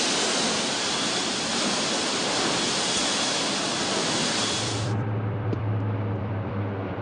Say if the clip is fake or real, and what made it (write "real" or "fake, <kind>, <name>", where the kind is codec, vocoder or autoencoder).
fake, vocoder, BigVGAN v2